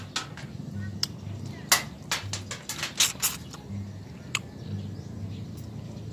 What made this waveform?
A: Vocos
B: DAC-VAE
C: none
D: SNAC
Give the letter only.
C